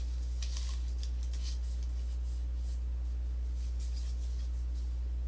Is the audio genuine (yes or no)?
yes